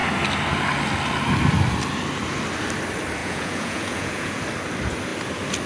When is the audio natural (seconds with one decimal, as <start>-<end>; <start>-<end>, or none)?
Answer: 0.0-3.2; 4.4-5.7